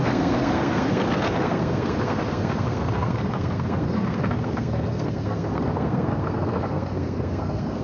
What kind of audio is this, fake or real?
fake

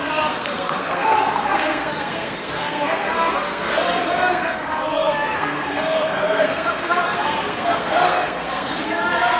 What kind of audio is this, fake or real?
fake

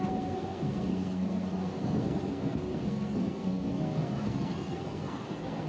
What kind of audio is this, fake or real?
fake